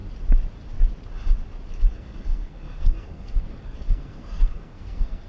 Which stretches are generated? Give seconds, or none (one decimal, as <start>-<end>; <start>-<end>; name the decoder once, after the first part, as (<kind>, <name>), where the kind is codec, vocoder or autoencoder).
1.9-5.3 (codec, SNAC)